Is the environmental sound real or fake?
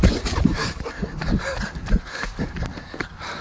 fake